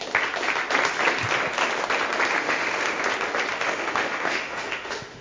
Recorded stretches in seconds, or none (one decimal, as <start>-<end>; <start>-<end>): 0.0-2.4; 3.0-3.5